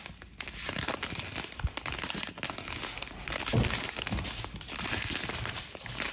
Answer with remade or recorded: recorded